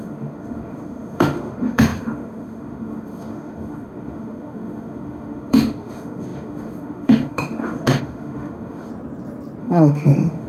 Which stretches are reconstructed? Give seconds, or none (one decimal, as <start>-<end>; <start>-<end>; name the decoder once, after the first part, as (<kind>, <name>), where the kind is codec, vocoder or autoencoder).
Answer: 0.0-8.9 (autoencoder, DAC-VAE); 9.6-10.5